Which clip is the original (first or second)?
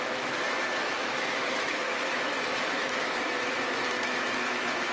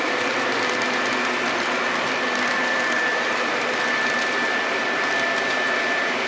second